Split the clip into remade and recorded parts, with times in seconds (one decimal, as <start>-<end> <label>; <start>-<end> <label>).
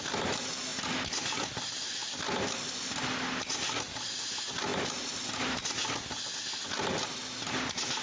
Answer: 0.0-8.0 recorded